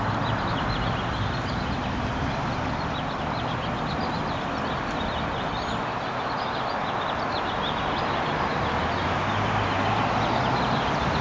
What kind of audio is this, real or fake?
real